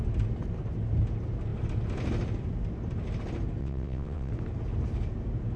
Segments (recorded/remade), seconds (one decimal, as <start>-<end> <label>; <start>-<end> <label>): 0.0-3.6 recorded; 3.6-4.3 remade; 4.3-5.6 recorded